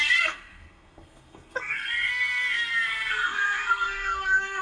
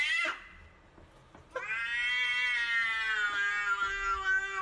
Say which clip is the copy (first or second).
first